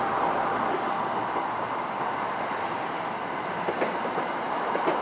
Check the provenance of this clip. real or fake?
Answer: real